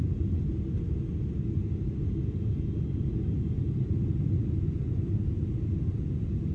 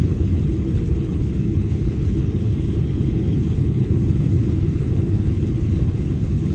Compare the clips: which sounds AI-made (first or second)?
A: second